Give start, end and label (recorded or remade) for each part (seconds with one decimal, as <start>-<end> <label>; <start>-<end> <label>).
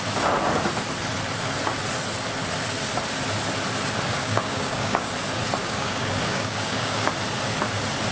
0.0-4.1 recorded; 4.1-5.1 remade; 5.1-5.6 recorded; 5.6-7.1 remade; 7.1-8.1 recorded